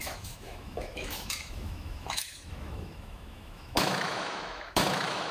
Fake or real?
fake